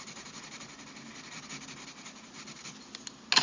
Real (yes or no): yes